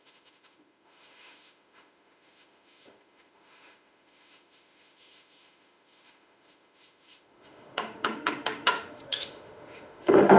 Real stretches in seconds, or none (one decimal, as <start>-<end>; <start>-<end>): none